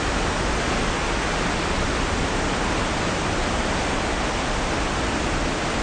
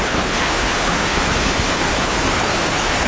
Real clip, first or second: first